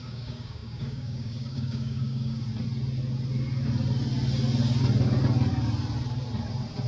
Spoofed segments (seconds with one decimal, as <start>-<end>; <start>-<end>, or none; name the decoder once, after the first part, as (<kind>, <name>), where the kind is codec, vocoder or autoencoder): 0.0-2.5 (codec, DAC)